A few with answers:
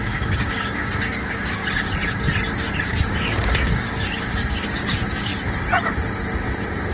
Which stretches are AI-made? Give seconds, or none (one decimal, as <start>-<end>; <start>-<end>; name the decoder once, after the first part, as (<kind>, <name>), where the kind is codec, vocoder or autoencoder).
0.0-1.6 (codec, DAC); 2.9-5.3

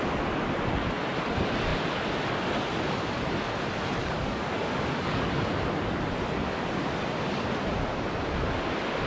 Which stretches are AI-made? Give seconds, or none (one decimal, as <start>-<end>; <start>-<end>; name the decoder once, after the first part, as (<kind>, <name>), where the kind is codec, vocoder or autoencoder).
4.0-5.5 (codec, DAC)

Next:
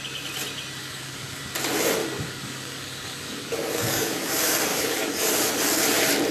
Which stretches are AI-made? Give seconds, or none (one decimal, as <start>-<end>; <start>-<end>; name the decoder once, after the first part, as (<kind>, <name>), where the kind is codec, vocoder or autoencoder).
0.8-1.4 (codec, DAC); 2.0-4.3; 4.7-5.3